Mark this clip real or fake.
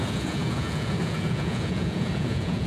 fake